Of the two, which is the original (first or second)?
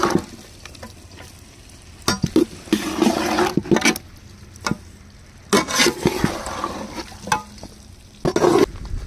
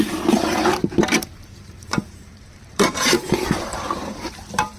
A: first